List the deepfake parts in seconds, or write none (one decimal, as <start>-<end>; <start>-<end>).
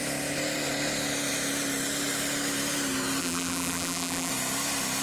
3.2-4.3